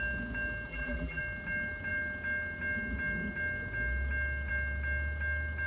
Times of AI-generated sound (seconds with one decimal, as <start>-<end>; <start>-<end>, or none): 0.7-1.2